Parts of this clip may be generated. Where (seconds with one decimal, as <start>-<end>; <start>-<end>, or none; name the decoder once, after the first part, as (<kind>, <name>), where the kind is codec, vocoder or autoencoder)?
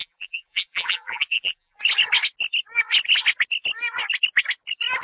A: 0.0-1.8 (vocoder, BigVGAN v2)